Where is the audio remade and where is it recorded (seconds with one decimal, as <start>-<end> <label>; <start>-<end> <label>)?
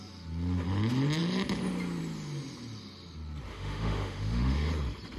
0.0-3.5 recorded; 3.5-4.7 remade; 4.7-5.2 recorded